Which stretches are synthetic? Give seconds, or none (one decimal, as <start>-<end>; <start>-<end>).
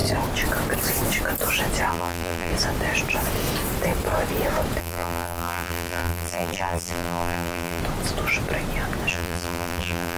1.9-2.5; 4.8-7.8; 9.1-10.2